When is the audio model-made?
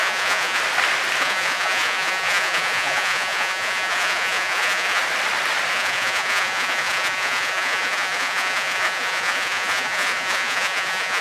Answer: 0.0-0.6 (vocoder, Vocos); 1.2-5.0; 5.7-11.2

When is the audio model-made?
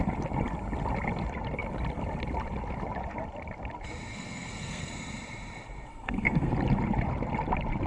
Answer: 4.1-4.9 (codec, SNAC); 5.9-6.5